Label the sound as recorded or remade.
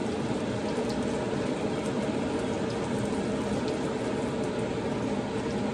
recorded